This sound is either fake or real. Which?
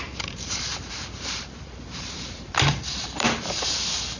fake